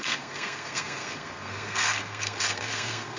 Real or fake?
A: fake